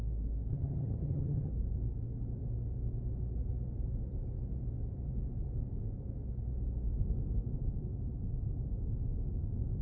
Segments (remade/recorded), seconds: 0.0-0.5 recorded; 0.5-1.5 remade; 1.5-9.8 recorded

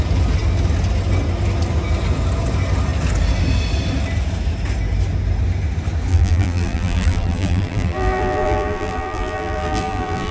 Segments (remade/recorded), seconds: 0.0-6.1 recorded; 6.1-10.3 remade

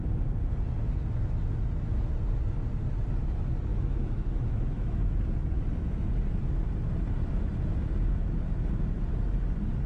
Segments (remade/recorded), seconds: 0.0-3.7 recorded; 3.7-5.1 remade; 5.1-9.9 recorded

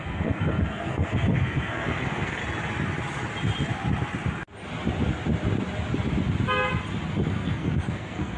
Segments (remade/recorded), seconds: 0.0-2.4 remade; 2.4-7.1 recorded; 7.1-8.4 remade

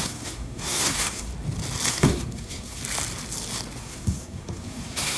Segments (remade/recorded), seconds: 0.0-1.3 remade; 1.3-1.9 recorded; 1.9-2.8 remade; 2.8-3.8 recorded; 3.8-5.2 remade

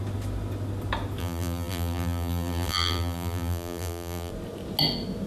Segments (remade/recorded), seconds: 0.0-1.2 recorded; 1.2-4.3 remade; 4.3-5.3 recorded

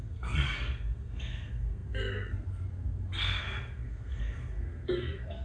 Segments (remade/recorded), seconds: 0.0-5.4 remade